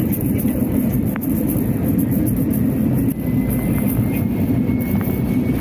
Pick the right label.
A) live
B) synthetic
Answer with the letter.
A